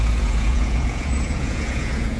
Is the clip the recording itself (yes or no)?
no